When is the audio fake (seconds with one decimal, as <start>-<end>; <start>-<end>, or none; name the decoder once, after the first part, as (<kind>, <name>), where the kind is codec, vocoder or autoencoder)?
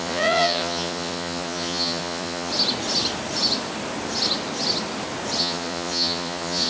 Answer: 0.0-2.5 (vocoder, Vocos); 5.4-6.7